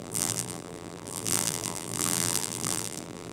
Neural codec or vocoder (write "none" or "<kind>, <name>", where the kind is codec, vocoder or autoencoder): vocoder, BigVGAN v2